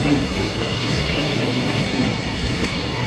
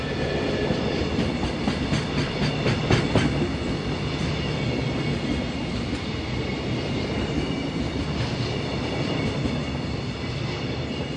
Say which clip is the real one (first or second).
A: second